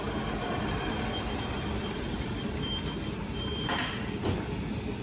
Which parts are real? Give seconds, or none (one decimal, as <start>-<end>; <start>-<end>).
0.0-1.8; 3.7-5.0